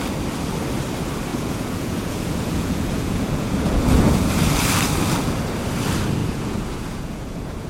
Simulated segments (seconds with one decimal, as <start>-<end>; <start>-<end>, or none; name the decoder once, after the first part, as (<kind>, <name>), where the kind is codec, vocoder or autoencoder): 1.3-4.3 (vocoder, Vocos); 6.2-7.7